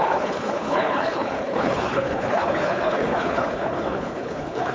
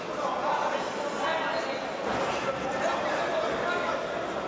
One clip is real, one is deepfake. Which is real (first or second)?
second